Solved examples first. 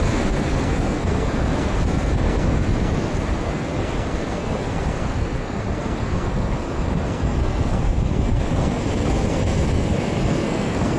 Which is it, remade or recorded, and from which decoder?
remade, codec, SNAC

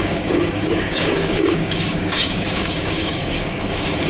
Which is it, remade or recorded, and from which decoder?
remade, codec, DAC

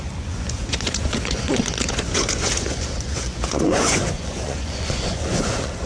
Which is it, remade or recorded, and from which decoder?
remade, vocoder, Vocos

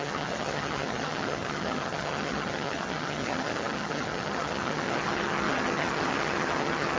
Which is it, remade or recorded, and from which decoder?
remade, vocoder, HiFi-GAN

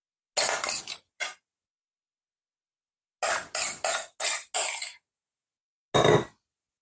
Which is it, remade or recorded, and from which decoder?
recorded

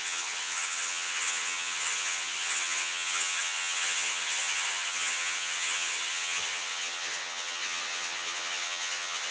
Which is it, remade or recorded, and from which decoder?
remade, vocoder, HiFi-GAN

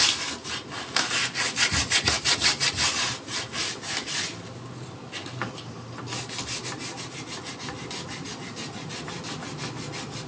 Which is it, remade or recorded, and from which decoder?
recorded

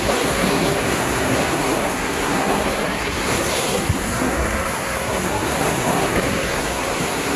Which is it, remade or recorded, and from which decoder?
remade, codec, SNAC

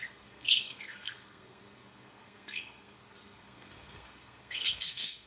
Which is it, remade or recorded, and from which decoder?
remade, codec, SNAC